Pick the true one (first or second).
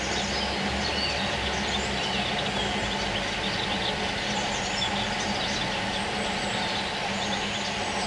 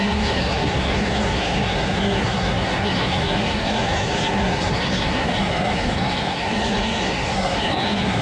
first